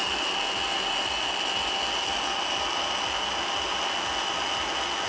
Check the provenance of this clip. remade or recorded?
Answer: recorded